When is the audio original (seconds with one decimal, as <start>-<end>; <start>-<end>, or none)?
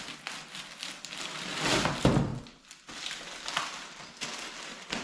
0.0-5.0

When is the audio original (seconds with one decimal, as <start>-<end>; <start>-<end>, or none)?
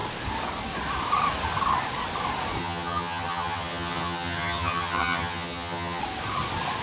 0.0-2.6; 6.0-6.8